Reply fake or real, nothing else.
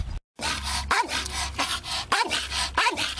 real